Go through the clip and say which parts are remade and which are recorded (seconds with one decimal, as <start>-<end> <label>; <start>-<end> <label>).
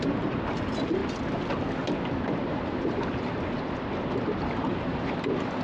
0.0-1.0 remade; 1.0-4.4 recorded; 4.4-5.6 remade